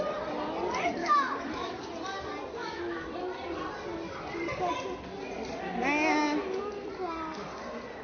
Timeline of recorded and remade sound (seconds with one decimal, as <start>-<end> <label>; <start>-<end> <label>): 0.0-1.0 recorded; 1.0-1.8 remade; 1.8-2.6 recorded; 2.6-3.1 remade; 3.1-8.0 recorded

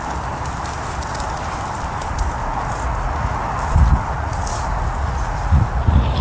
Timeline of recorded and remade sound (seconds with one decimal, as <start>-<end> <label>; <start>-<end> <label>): 0.0-2.4 recorded; 2.4-6.2 remade

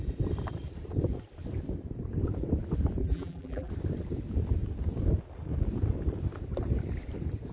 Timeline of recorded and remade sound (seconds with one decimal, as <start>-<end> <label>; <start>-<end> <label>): 0.0-3.0 recorded; 3.0-3.7 remade; 3.7-7.5 recorded